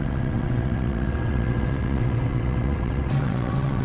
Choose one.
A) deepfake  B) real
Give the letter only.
A